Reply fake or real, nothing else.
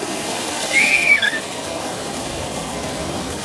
fake